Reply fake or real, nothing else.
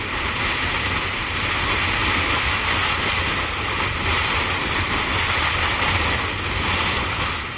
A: real